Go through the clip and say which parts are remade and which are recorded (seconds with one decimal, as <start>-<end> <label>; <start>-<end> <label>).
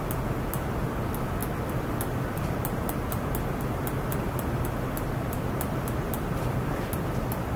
0.0-7.6 recorded